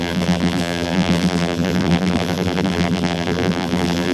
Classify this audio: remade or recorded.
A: remade